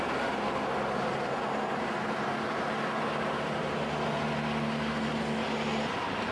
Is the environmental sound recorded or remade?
recorded